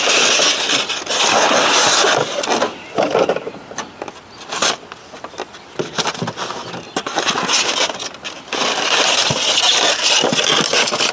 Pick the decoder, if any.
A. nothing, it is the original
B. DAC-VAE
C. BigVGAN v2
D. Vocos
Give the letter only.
A